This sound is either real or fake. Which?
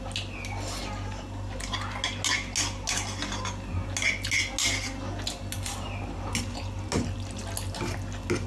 real